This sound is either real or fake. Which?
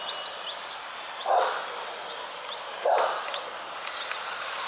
real